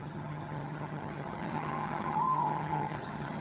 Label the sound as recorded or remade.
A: remade